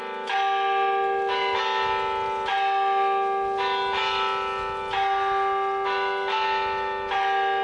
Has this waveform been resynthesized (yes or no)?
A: no